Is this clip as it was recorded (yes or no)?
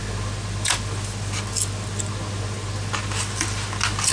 yes